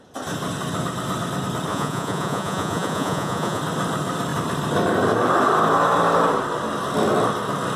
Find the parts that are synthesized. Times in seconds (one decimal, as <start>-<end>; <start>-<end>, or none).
1.7-3.6